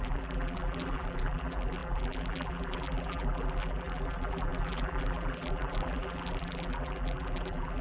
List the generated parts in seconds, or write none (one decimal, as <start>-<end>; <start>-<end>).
0.0-7.8